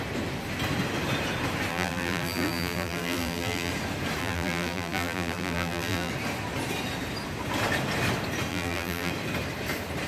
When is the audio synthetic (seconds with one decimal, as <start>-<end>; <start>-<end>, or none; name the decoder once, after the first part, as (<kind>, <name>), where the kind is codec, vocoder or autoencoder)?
1.7-3.7 (vocoder, BigVGAN v2); 4.2-6.1; 8.5-9.1